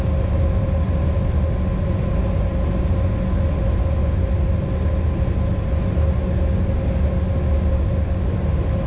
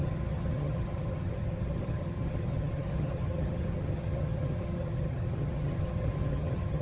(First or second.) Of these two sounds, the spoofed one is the second